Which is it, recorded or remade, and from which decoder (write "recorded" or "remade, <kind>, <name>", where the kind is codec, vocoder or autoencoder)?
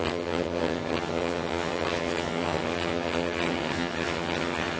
remade, vocoder, HiFi-GAN